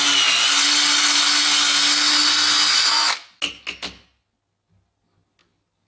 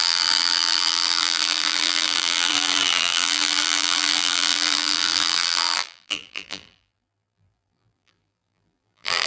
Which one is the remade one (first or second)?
second